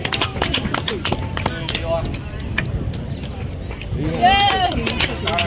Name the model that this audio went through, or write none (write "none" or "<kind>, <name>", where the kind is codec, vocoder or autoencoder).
none